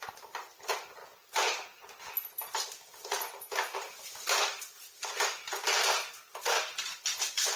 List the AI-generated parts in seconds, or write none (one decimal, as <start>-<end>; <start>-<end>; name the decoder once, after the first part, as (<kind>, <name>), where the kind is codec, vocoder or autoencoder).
0.0-1.0 (vocoder, BigVGAN v2); 4.4-7.6